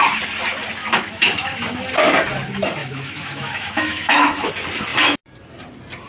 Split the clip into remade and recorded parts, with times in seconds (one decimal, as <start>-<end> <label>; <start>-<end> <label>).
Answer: 0.0-0.8 recorded; 0.8-1.9 remade; 1.9-2.8 recorded; 2.8-4.5 remade; 4.5-6.1 recorded